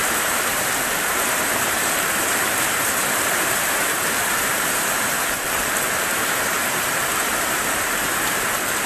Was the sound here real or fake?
fake